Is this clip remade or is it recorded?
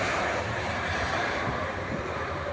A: remade